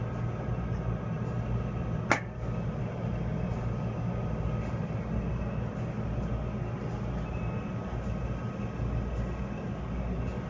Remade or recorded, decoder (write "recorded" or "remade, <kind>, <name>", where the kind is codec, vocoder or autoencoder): recorded